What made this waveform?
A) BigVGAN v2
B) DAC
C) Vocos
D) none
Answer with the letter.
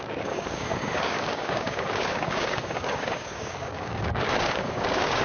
B